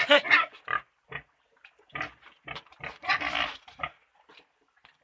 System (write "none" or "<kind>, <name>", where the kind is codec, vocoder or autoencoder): vocoder, BigVGAN v2